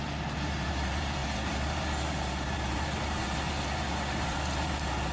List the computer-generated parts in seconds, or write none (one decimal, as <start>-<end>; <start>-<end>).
0.0-5.1